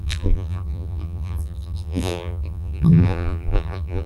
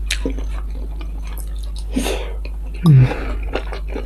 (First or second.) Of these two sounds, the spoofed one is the first